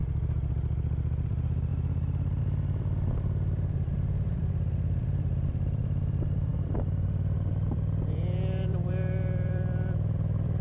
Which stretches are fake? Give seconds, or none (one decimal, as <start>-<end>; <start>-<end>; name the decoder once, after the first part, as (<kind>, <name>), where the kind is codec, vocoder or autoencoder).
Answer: 0.0-1.7 (vocoder, BigVGAN v2); 2.4-10.6